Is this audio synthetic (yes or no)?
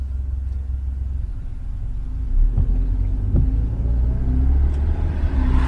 no